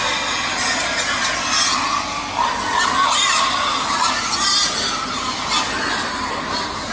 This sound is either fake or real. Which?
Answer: real